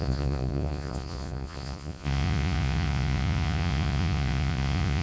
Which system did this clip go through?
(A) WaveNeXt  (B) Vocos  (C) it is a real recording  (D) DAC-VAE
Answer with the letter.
B